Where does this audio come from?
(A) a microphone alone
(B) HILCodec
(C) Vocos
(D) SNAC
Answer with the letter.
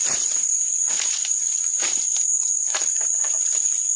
C